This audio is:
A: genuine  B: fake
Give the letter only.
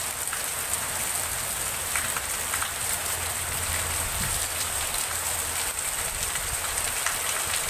B